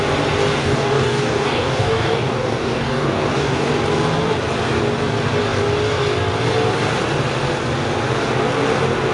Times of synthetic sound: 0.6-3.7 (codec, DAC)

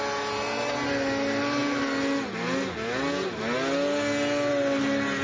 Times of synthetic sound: none

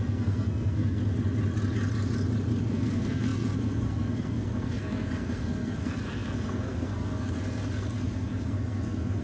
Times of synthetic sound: 0.0-1.0 (codec, SNAC); 2.7-9.2